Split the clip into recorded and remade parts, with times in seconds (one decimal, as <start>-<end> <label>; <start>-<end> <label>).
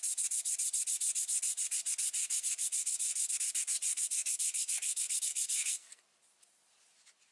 0.0-2.2 recorded; 2.2-3.3 remade; 3.3-3.9 recorded; 3.9-6.1 remade; 6.1-7.3 recorded